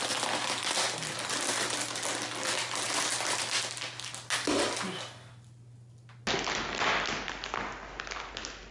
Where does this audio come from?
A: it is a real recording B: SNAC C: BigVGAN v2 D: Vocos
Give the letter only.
A